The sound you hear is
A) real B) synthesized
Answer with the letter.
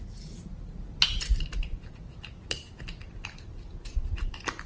A